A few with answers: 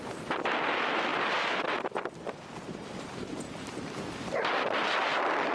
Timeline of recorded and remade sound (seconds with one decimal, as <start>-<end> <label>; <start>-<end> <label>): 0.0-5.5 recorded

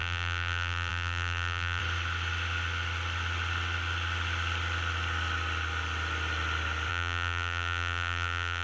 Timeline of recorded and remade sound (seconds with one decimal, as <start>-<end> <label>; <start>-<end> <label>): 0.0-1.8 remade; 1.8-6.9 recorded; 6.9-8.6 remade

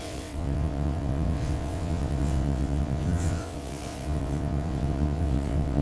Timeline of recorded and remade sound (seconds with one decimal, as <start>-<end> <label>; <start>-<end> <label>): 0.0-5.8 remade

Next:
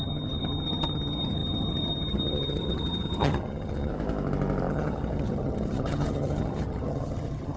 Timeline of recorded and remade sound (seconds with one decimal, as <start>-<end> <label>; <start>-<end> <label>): 0.0-3.9 remade; 3.9-4.7 recorded; 4.7-7.6 remade